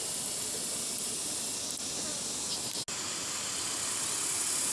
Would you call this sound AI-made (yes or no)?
no